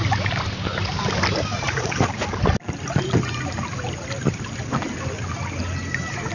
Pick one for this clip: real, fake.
real